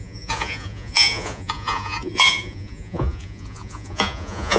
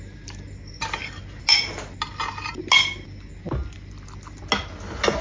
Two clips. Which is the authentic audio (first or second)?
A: second